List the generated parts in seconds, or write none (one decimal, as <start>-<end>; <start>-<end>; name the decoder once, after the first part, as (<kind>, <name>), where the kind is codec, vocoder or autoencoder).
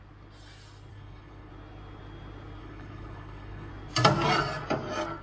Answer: 0.9-1.5 (codec, HILCodec); 2.6-3.7